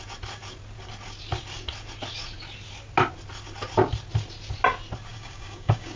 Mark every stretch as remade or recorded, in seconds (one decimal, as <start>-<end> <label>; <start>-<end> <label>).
0.0-5.1 recorded; 5.1-6.0 remade